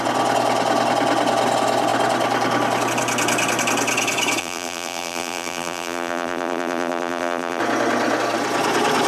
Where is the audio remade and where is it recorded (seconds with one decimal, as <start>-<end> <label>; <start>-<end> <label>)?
0.0-4.4 recorded; 4.4-7.6 remade; 7.6-9.1 recorded